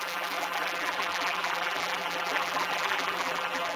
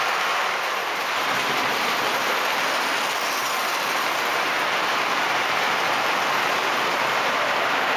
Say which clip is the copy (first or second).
first